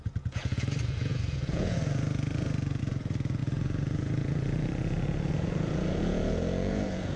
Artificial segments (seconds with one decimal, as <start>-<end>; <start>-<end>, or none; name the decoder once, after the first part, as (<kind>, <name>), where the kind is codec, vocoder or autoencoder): 0.0-7.2 (vocoder, Vocos)